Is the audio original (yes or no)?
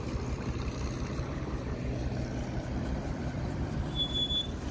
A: yes